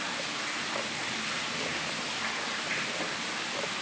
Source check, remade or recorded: remade